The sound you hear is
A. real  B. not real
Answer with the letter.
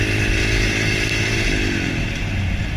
A